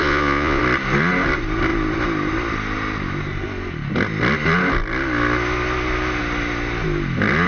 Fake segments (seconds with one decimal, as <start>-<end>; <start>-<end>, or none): 0.0-0.6

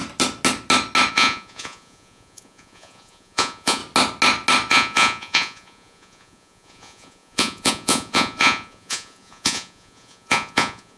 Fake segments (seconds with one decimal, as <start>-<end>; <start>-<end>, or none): 1.1-3.8; 4.7-11.0